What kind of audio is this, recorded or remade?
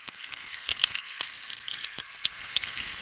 remade